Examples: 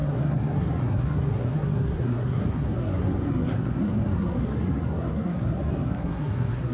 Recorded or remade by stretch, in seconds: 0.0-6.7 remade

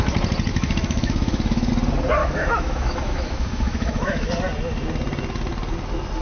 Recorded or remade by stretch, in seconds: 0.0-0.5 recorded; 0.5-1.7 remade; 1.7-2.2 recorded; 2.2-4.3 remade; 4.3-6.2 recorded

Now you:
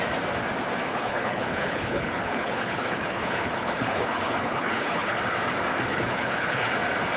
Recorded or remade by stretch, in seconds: 0.0-0.9 recorded; 0.9-5.2 remade; 5.2-5.9 recorded; 5.9-6.7 remade; 6.7-7.2 recorded

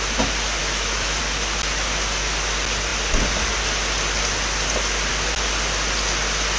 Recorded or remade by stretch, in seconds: 0.0-0.6 recorded; 0.6-1.2 remade; 1.2-6.6 recorded

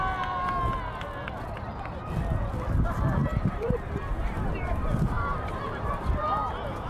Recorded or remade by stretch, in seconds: 0.0-3.2 recorded; 3.2-6.5 remade; 6.5-6.9 recorded

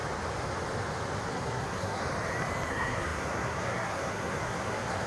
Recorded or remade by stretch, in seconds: 0.0-1.3 recorded; 1.3-2.0 remade; 2.0-2.7 recorded; 2.7-5.1 remade